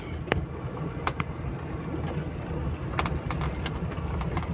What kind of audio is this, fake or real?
real